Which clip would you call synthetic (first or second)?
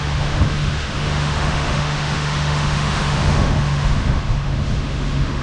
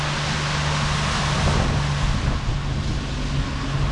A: first